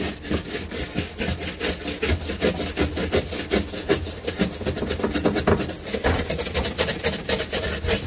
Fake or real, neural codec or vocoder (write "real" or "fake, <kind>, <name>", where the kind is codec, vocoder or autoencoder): real